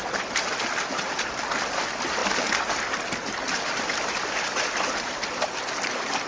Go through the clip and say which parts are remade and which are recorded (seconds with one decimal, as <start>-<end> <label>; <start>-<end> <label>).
0.0-6.3 recorded